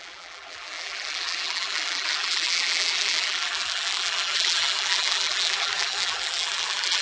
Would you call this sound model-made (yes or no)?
yes